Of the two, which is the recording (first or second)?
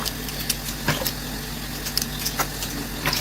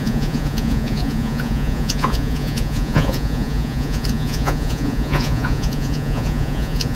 first